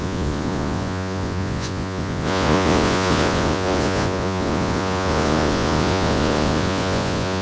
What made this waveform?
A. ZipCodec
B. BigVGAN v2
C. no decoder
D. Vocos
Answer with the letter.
D